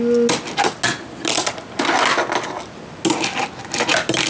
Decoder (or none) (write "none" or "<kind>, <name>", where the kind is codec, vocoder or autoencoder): none